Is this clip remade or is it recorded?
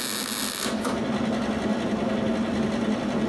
recorded